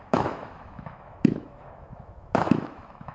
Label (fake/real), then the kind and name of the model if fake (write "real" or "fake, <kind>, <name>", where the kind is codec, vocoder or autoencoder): fake, autoencoder, DAC-VAE